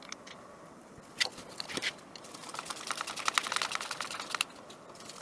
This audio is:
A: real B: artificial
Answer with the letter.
A